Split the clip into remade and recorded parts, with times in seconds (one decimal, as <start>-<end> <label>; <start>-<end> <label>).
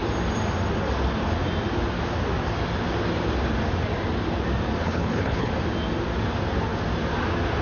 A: 0.0-4.8 recorded; 4.8-5.5 remade; 5.5-7.6 recorded